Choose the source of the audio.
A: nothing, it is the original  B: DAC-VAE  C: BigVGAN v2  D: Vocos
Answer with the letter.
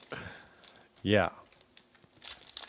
A